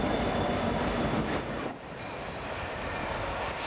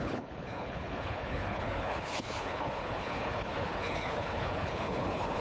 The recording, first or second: first